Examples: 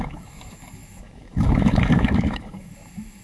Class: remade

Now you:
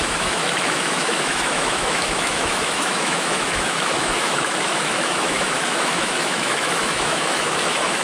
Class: remade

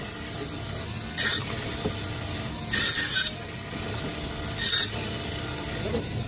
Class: recorded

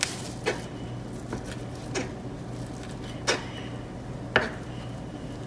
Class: recorded